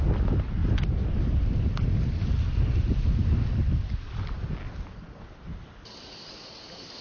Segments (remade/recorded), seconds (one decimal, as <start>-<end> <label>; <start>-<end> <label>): 0.0-7.0 recorded